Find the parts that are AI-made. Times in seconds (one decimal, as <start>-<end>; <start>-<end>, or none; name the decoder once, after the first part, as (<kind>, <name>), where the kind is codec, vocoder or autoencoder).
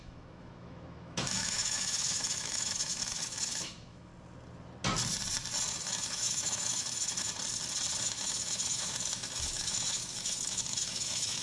0.0-4.1 (autoencoder, DAC-VAE); 5.7-7.3; 8.0-11.4